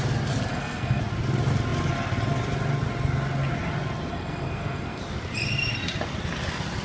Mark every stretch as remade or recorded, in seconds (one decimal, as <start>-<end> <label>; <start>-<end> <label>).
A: 0.0-0.5 recorded; 0.5-1.0 remade; 1.0-4.1 recorded; 4.1-5.0 remade; 5.0-6.8 recorded